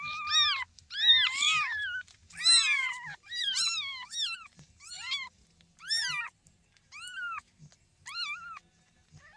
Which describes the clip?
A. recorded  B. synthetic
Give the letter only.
A